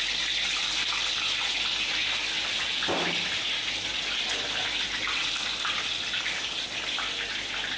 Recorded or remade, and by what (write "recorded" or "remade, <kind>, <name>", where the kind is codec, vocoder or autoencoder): recorded